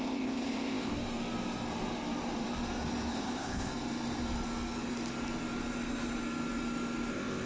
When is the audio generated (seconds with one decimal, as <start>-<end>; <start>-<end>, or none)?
0.0-0.9; 3.1-3.7; 7.1-7.5